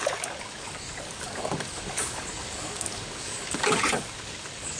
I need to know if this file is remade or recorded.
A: remade